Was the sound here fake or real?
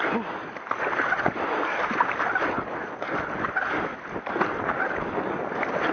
real